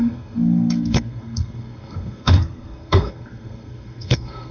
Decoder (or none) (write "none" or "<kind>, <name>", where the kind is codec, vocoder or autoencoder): codec, SNAC